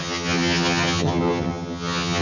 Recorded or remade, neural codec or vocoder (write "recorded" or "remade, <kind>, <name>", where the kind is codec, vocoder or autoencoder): remade, vocoder, HiFi-GAN